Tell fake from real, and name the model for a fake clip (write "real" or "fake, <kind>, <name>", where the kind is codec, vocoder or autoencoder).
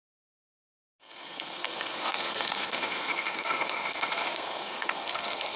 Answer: fake, codec, SNAC